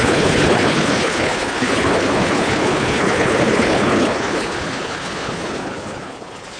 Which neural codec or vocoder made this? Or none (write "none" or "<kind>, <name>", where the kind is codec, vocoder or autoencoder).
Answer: codec, HILCodec